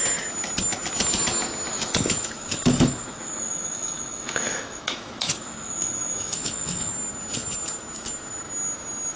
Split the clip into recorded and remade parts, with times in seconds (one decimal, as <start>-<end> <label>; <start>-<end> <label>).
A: 0.0-1.7 recorded; 1.7-6.9 remade; 6.9-9.2 recorded

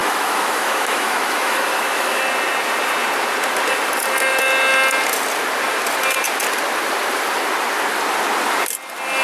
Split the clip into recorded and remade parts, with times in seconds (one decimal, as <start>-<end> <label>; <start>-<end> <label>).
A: 0.0-2.2 remade; 2.2-9.2 recorded

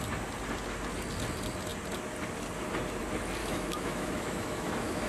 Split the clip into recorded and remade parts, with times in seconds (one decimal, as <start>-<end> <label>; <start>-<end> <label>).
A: 0.0-3.4 recorded; 3.4-5.1 remade

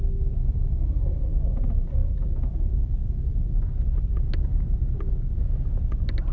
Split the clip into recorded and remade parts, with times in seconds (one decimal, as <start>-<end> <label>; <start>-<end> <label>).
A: 0.0-0.4 recorded; 0.4-1.2 remade; 1.2-6.3 recorded

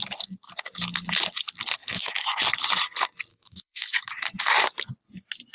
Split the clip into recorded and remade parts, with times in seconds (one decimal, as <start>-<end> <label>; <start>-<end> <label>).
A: 0.0-1.8 recorded; 1.8-2.4 remade; 2.4-3.3 recorded; 3.3-4.1 remade; 4.1-5.5 recorded

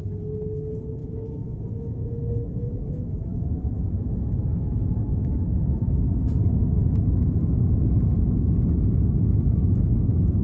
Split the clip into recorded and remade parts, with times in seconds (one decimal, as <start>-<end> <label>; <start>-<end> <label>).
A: 0.0-1.0 recorded; 1.0-5.9 remade; 5.9-6.8 recorded; 6.8-7.6 remade; 7.6-10.4 recorded